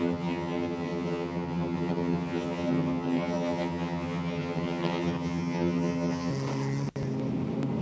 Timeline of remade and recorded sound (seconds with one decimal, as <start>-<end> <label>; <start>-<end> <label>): 0.0-6.3 remade; 6.3-7.8 recorded